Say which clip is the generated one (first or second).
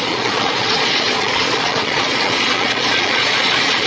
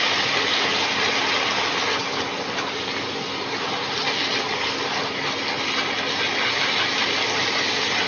first